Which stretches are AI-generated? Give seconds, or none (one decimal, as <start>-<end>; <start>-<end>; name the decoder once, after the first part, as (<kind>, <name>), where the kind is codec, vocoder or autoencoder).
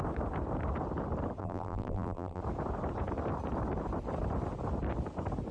1.4-2.4 (vocoder, BigVGAN v2)